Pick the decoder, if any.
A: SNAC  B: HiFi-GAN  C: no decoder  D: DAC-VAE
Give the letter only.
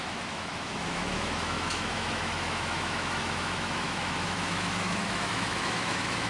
D